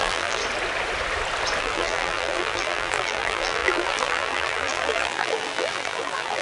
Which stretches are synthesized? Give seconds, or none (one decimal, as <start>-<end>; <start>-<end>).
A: 0.0-0.4; 1.6-6.4